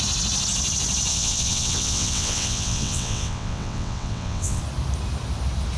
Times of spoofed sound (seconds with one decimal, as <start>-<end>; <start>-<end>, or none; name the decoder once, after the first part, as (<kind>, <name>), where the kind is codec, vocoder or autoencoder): 1.1-4.6 (vocoder, WaveNeXt)